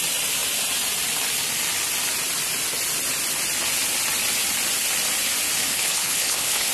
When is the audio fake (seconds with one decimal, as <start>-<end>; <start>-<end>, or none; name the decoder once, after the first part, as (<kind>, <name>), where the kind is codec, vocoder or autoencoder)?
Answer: 5.7-6.7 (codec, HILCodec)